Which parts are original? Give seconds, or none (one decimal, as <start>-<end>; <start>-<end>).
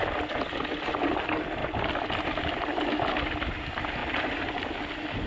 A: 0.0-4.0; 4.7-5.3